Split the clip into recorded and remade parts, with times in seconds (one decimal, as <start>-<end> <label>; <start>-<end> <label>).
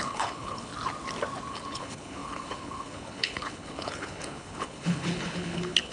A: 0.0-0.7 remade; 0.7-1.5 recorded; 1.5-5.9 remade